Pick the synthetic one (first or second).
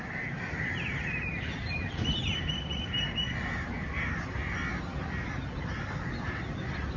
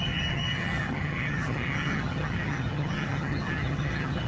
second